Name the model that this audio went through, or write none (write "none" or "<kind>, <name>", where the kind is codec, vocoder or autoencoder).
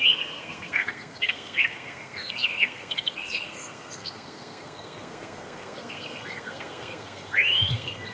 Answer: codec, SNAC